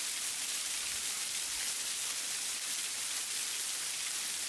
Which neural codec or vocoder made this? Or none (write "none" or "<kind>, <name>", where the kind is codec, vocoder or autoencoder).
none